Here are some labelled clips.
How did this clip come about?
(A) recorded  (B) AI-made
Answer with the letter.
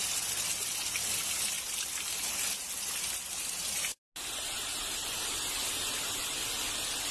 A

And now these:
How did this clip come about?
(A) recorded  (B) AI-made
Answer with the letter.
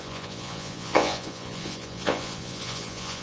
B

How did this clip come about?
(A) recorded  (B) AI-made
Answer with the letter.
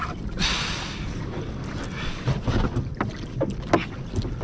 A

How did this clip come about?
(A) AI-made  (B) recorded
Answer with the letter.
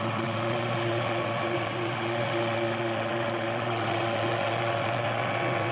A